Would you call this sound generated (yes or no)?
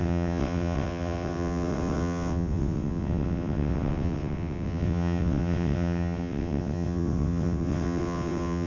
yes